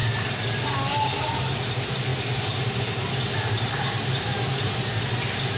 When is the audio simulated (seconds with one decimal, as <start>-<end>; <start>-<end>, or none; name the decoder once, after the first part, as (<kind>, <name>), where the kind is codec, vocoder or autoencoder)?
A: none

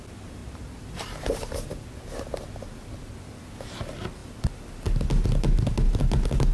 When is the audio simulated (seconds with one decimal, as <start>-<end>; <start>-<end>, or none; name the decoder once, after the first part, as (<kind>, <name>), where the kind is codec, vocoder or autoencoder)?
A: 0.4-1.5 (vocoder, BigVGAN v2)